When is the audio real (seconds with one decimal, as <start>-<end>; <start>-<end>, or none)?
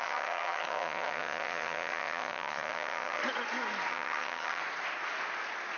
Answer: 3.2-3.9; 4.6-5.8